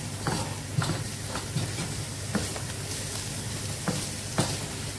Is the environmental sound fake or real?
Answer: real